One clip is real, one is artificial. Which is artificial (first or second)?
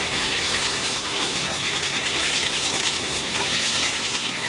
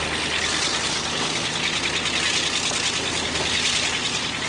first